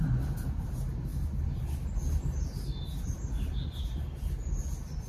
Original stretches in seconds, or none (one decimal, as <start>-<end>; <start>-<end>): 0.0-5.1